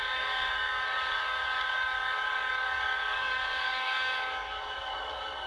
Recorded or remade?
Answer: remade